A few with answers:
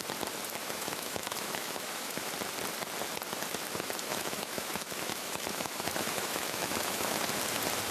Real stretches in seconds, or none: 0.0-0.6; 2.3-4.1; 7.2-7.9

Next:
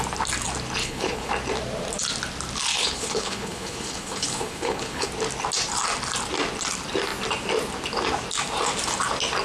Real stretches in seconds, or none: 0.0-0.8; 1.3-2.8; 5.1-9.4

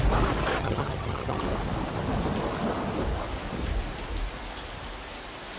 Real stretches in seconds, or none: 0.0-0.6; 1.4-5.6

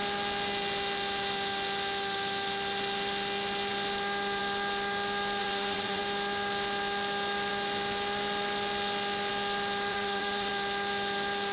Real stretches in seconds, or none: 0.0-5.4; 6.0-9.9; 10.5-11.5

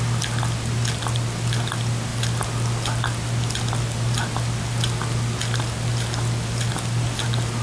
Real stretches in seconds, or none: 0.0-7.6

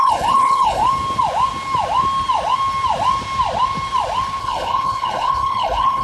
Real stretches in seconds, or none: 0.8-4.4